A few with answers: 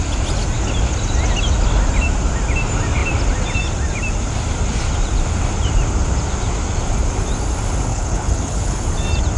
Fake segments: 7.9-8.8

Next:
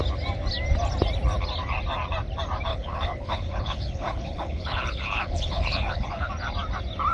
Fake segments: 2.7-6.3